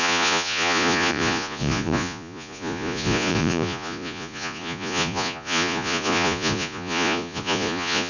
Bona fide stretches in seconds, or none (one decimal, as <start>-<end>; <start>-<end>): none